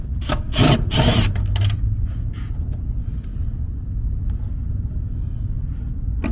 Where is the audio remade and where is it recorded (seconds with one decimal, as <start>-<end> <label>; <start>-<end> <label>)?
0.0-6.3 recorded